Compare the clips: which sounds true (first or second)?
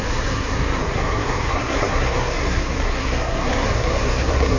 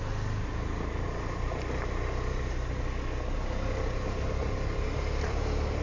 second